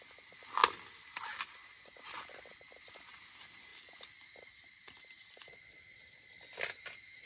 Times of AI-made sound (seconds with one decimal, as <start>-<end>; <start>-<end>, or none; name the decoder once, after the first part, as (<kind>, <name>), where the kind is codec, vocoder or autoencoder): none